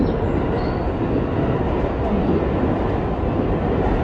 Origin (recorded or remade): recorded